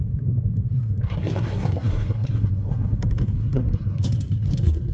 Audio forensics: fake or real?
fake